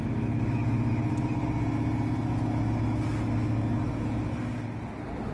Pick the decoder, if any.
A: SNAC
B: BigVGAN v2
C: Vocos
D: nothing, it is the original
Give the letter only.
D